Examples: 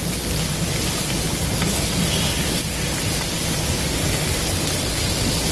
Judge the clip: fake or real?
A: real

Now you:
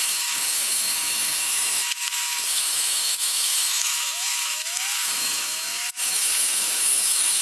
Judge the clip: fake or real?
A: fake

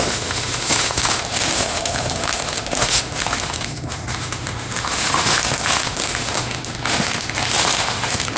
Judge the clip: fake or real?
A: fake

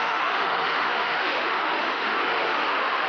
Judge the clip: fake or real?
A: fake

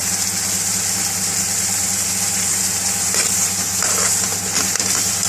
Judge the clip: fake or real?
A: real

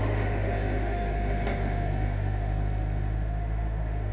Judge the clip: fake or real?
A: fake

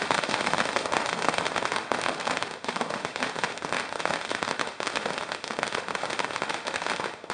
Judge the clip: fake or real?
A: fake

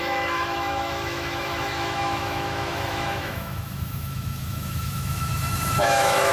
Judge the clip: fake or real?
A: fake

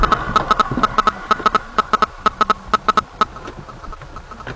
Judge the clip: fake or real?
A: real